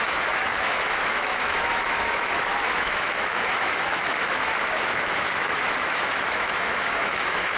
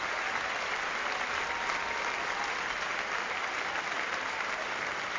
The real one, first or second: second